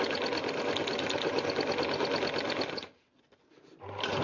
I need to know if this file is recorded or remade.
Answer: recorded